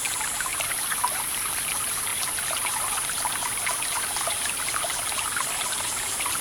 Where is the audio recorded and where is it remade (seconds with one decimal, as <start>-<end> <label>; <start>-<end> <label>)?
0.0-0.5 recorded; 0.5-1.7 remade; 1.7-6.4 recorded